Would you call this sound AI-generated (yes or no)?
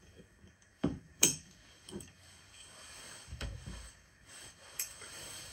yes